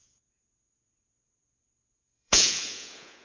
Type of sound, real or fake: fake